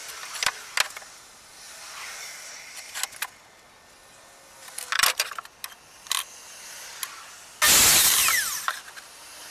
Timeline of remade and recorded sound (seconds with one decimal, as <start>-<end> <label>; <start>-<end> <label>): 0.0-9.5 recorded